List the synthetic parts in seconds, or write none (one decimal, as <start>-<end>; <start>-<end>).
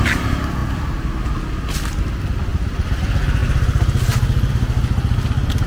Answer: 2.5-3.0